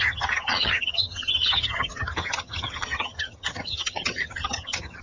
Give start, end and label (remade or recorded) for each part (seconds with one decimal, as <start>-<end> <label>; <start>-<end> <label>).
0.0-5.0 remade